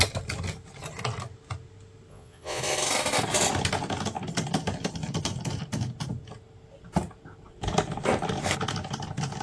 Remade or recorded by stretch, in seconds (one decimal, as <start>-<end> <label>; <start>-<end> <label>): 0.0-2.1 recorded; 2.1-2.6 remade; 2.6-9.4 recorded